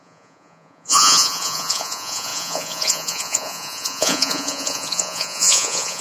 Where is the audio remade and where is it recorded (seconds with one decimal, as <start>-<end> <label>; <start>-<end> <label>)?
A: 0.0-6.0 remade

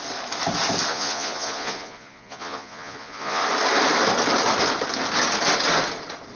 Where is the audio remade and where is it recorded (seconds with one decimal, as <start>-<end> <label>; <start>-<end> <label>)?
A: 0.0-0.9 recorded; 0.9-3.4 remade; 3.4-6.4 recorded

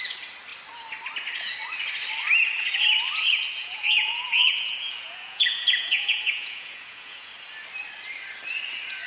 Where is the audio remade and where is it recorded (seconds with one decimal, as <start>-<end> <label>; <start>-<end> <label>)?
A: 0.0-3.6 recorded; 3.6-7.3 remade; 7.3-9.1 recorded

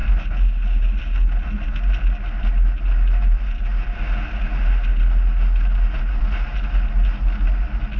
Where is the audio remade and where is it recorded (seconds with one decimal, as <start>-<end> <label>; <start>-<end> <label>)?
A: 0.0-8.0 recorded

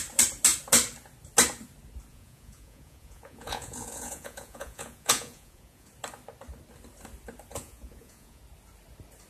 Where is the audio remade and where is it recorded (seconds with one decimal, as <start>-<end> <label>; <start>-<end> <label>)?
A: 0.0-2.1 recorded; 2.1-5.9 remade; 5.9-7.5 recorded; 7.5-8.4 remade; 8.4-9.3 recorded

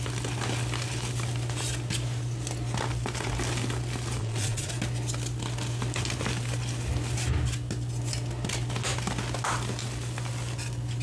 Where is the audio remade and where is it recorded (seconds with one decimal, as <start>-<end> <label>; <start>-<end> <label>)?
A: 0.0-4.2 recorded; 4.2-4.7 remade; 4.7-11.0 recorded